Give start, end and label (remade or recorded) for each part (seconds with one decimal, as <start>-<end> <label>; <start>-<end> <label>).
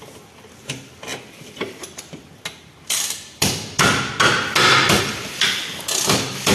0.0-6.5 recorded